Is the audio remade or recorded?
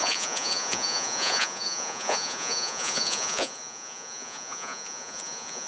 remade